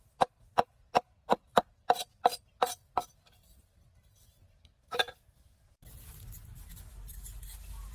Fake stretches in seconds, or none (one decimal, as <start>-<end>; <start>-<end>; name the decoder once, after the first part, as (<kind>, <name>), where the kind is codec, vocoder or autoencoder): none